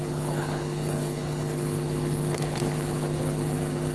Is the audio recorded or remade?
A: remade